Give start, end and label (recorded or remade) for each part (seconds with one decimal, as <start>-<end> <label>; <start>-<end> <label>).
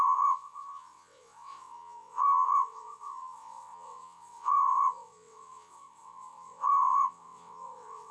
0.0-8.1 remade